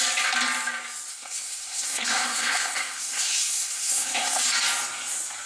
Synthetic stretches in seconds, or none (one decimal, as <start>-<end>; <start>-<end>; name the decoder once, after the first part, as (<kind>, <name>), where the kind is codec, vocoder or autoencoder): 1.1-4.4 (codec, SNAC)